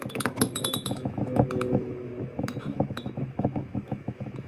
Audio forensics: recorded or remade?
remade